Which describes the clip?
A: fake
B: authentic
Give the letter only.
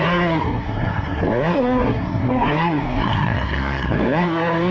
A